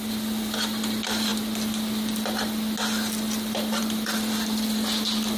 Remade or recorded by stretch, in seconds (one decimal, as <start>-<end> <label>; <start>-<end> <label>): 0.0-1.3 remade; 1.3-3.8 recorded; 3.8-5.4 remade

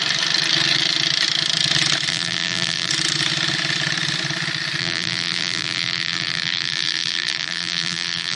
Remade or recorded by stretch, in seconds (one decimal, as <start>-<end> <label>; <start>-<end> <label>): 0.0-2.1 recorded; 2.1-2.9 remade; 2.9-4.8 recorded; 4.8-8.4 remade

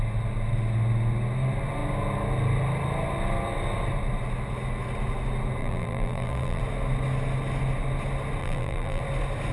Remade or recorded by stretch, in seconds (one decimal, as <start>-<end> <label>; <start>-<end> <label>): 0.0-5.6 recorded; 5.6-6.6 remade; 6.6-8.4 recorded; 8.4-9.0 remade; 9.0-9.5 recorded

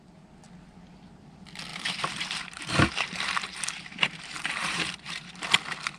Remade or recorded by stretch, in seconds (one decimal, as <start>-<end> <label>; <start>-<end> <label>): 0.0-1.7 recorded; 1.7-5.3 remade; 5.3-6.0 recorded

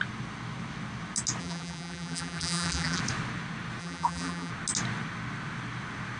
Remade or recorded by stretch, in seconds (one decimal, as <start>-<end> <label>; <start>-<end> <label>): 0.0-1.4 recorded; 1.4-3.0 remade; 3.0-3.8 recorded; 3.8-4.5 remade; 4.5-6.2 recorded

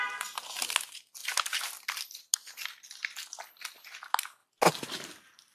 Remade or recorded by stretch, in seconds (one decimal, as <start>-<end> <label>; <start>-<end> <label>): 0.0-5.5 recorded

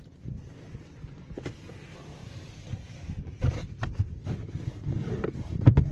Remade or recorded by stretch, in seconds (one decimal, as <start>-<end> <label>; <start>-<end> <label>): 0.0-2.2 recorded; 2.2-5.3 remade; 5.3-5.9 recorded